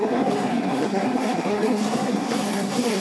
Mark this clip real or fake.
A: fake